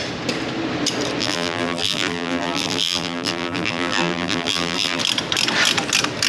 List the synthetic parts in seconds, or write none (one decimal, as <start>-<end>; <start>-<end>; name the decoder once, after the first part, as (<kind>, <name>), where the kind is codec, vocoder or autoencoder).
1.2-5.0 (vocoder, BigVGAN v2)